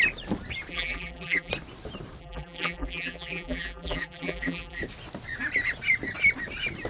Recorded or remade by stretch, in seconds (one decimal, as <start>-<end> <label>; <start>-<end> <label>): 0.0-0.7 recorded; 0.7-1.5 remade; 1.5-2.2 recorded; 2.2-4.8 remade; 4.8-6.9 recorded